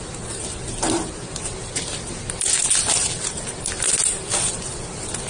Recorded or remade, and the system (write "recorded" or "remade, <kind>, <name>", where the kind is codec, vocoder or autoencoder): recorded